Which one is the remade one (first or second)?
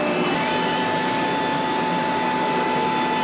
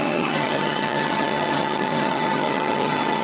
second